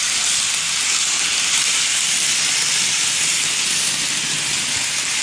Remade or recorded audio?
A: recorded